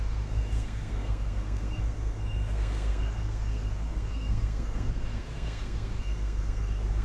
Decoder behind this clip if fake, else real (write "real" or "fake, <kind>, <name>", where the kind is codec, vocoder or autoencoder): fake, codec, SNAC